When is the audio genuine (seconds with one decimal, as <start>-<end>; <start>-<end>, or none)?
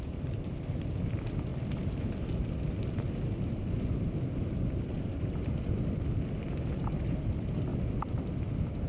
0.0-8.9